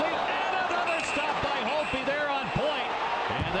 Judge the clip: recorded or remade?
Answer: recorded